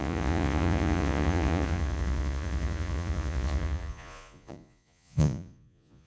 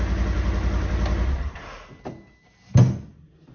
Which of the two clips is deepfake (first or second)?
first